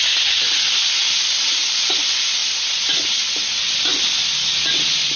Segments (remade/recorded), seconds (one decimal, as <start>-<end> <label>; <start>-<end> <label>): 0.0-5.2 recorded